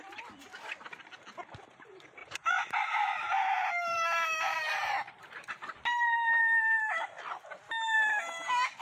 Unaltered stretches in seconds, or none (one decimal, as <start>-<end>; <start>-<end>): 0.0-2.2; 5.8-8.8